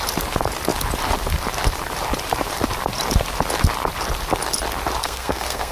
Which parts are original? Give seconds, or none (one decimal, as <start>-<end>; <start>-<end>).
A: 0.0-5.0